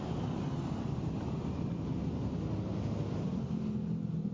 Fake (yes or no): no